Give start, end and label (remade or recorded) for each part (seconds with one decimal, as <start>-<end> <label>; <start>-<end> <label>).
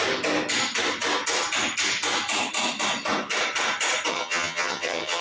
0.0-4.1 recorded; 4.1-5.2 remade